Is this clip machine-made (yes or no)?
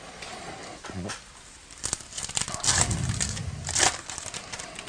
no